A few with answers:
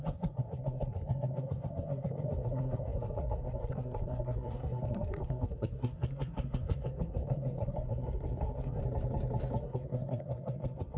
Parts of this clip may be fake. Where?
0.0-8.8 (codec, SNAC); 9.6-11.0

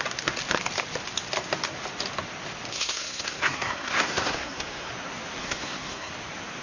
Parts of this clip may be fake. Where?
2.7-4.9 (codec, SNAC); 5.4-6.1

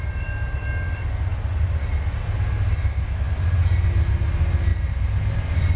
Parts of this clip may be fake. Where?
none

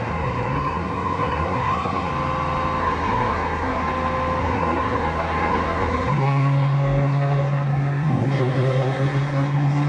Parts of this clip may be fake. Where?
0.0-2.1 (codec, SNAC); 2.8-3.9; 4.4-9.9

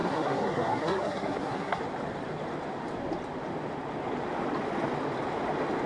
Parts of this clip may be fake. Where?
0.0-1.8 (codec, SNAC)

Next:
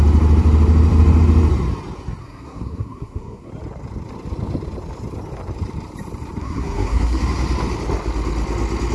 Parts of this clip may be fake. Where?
2.2-3.5 (codec, SNAC); 6.4-7.2

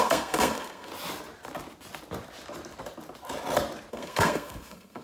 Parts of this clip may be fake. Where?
0.0-0.9 (codec, SNAC); 3.9-5.0

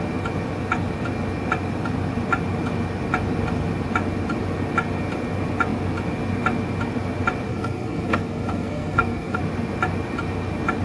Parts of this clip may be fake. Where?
7.5-9.4 (codec, SNAC)